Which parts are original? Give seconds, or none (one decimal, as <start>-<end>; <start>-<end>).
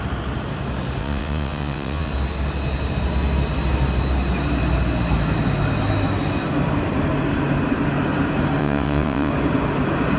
0.0-1.0; 2.1-8.6; 9.3-10.2